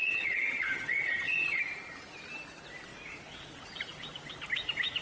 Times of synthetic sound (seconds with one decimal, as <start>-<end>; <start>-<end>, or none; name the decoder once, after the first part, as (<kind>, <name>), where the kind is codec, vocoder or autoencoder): 0.0-1.6 (vocoder, HiFi-GAN)